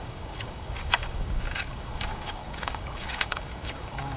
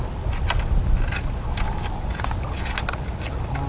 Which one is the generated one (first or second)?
first